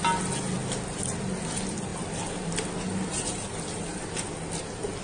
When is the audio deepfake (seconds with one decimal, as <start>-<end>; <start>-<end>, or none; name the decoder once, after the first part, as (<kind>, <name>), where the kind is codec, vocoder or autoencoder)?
none